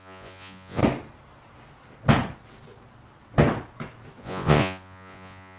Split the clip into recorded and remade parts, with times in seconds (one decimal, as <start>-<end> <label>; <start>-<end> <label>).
0.0-0.8 remade; 0.8-4.2 recorded; 4.2-5.6 remade

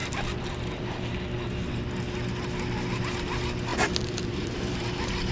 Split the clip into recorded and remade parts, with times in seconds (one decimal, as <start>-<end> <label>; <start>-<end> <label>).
0.0-3.7 recorded; 3.7-4.6 remade; 4.6-5.3 recorded

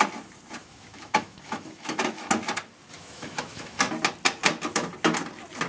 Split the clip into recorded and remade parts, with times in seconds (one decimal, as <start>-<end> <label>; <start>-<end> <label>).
0.0-0.6 recorded; 0.6-2.3 remade; 2.3-2.9 recorded; 2.9-3.8 remade; 3.8-5.7 recorded

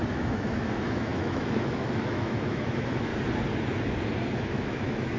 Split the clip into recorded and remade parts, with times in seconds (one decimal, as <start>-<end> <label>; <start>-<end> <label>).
0.0-3.1 remade; 3.1-4.4 recorded; 4.4-5.2 remade

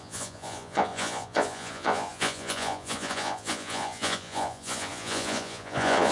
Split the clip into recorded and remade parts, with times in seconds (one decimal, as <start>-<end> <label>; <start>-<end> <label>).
0.0-6.1 remade

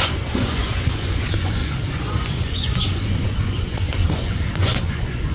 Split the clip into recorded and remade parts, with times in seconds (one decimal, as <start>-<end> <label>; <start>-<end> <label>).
0.0-5.3 remade